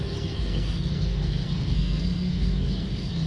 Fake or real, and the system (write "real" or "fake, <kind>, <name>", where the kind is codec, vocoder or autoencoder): fake, codec, SNAC